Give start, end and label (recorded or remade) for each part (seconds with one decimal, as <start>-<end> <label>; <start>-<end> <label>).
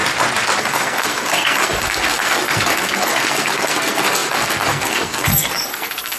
0.0-0.6 recorded; 0.6-6.2 remade